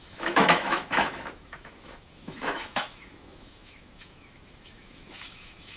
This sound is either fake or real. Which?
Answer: fake